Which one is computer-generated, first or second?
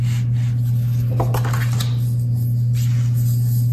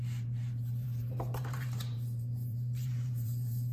second